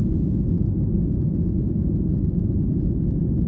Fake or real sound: fake